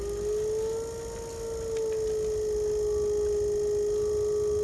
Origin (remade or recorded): recorded